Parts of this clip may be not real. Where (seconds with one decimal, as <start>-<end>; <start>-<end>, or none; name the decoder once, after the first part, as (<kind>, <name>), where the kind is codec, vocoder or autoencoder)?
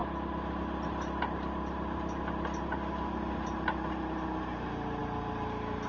none